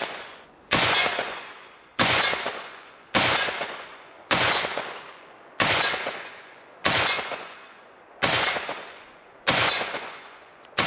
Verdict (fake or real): fake